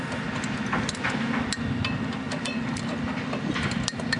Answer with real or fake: real